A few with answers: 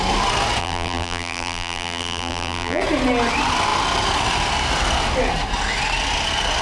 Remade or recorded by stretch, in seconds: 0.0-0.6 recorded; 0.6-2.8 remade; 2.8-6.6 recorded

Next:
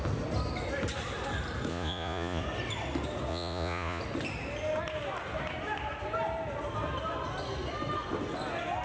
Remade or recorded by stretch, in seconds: 0.0-1.7 recorded; 1.7-2.4 remade; 2.4-3.3 recorded; 3.3-4.0 remade; 4.0-8.8 recorded

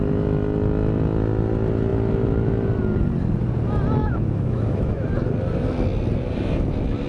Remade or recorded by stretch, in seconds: 0.0-4.0 recorded; 4.0-5.1 remade; 5.1-7.1 recorded

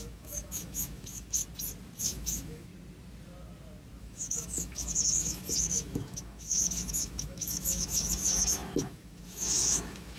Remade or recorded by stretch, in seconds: 0.0-1.4 remade; 1.4-2.0 recorded; 2.0-2.7 remade; 2.7-4.0 recorded; 4.0-10.2 remade

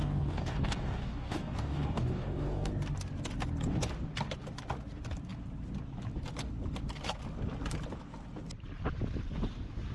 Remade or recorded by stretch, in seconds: 0.0-2.7 remade; 2.7-9.9 recorded